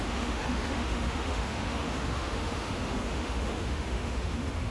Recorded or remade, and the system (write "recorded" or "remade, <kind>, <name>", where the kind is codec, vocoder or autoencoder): remade, autoencoder, DAC-VAE